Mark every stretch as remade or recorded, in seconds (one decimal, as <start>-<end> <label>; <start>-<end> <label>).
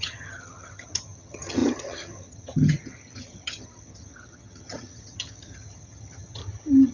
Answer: 0.0-6.4 remade; 6.4-6.9 recorded